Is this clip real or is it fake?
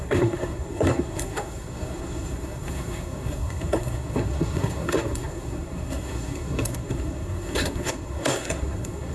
fake